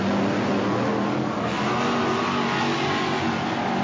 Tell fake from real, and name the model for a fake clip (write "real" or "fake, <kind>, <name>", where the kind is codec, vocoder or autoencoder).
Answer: real